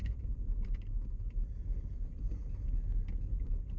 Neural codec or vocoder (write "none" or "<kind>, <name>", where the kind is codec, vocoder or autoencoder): none